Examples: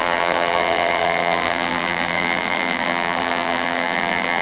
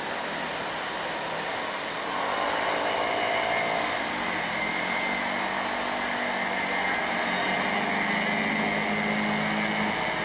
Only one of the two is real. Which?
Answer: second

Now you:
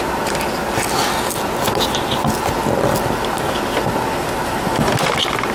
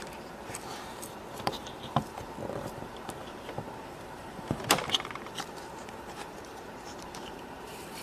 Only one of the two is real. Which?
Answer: first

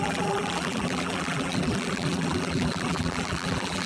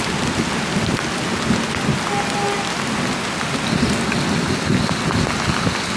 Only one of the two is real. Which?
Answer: second